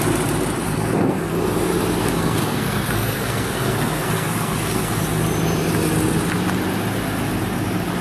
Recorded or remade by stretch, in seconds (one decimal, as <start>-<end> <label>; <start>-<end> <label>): 0.0-0.6 recorded; 0.6-1.3 remade; 1.3-2.0 recorded; 2.0-5.0 remade; 5.0-8.0 recorded